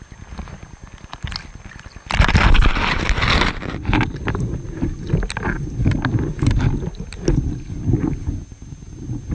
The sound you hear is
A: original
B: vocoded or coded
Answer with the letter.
A